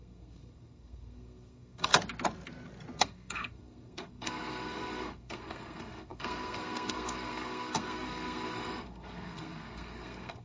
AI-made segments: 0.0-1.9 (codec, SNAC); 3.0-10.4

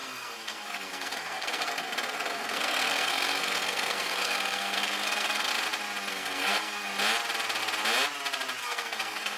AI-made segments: 0.0-5.5 (codec, SNAC); 6.1-6.9; 8.6-9.4

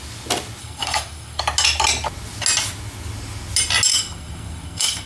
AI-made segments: 0.6-1.4 (codec, SNAC); 3.9-5.1